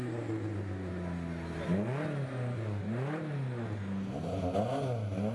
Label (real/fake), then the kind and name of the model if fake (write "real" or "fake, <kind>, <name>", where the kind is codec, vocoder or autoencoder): real